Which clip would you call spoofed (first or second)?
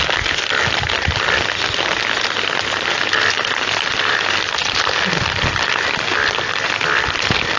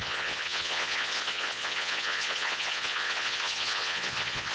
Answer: second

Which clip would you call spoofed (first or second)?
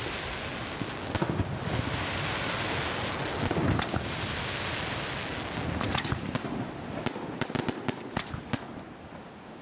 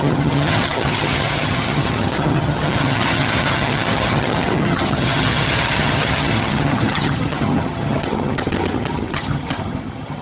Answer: second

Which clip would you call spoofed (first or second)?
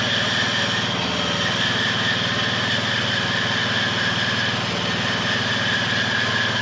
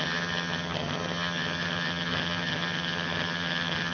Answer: second